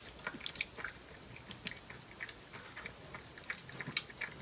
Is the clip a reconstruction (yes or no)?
no